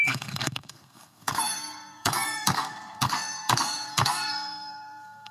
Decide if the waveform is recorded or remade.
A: remade